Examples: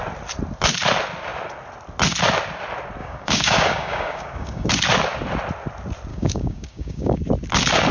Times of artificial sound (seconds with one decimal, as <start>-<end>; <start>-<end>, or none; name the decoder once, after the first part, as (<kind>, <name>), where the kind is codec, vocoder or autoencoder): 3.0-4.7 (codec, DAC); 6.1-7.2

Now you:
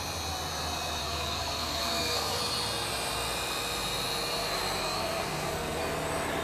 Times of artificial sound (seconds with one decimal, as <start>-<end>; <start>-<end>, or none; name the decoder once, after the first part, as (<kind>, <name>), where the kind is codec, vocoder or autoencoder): 1.0-2.4 (codec, SNAC); 4.8-5.8

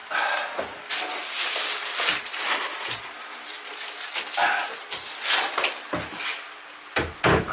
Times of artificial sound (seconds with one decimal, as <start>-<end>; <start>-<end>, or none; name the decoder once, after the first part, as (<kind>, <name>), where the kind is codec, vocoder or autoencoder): none

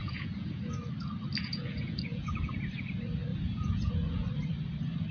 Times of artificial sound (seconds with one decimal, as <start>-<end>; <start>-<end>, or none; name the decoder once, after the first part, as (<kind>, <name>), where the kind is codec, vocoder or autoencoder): 0.0-0.6 (vocoder, Vocos); 1.4-2.6; 3.3-3.9

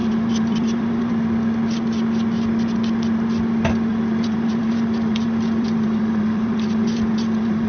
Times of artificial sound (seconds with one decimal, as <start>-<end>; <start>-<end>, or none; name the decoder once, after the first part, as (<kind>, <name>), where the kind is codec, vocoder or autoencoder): 0.0-1.1 (vocoder, BigVGAN v2); 3.9-7.7

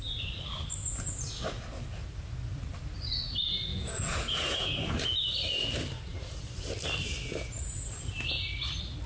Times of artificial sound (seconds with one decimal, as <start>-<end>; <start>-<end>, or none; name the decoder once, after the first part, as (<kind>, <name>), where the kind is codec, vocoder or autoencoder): 0.8-1.4 (vocoder, Vocos); 3.7-4.9; 7.3-7.8

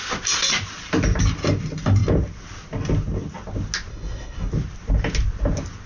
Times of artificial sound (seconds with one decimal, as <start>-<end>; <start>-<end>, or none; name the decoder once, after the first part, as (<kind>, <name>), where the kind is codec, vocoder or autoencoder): 3.9-4.5 (codec, SNAC)

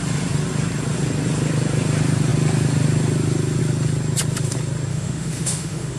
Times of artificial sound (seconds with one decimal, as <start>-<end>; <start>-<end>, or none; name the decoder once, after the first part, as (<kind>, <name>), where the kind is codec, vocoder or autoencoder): 4.9-6.0 (autoencoder, DAC-VAE)